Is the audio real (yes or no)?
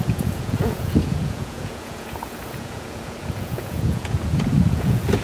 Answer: no